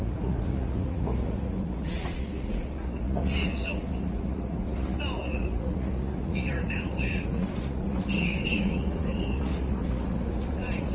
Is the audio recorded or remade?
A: remade